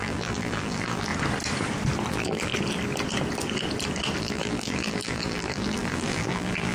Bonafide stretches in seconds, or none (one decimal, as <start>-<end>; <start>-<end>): 1.1-2.1; 2.5-4.2